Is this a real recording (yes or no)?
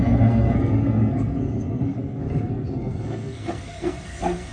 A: no